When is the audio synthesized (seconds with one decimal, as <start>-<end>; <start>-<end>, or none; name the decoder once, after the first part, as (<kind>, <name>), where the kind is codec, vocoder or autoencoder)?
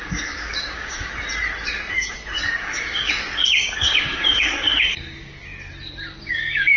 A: 0.0-1.1 (codec, DAC); 1.9-5.5; 6.2-6.8